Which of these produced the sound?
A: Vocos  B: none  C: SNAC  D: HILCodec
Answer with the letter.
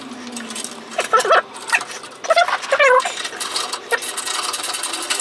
B